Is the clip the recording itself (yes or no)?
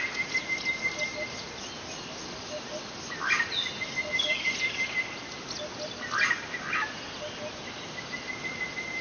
yes